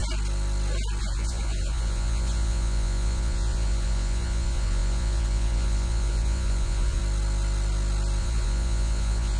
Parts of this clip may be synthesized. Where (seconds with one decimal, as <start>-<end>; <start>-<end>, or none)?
1.0-7.0; 8.2-9.4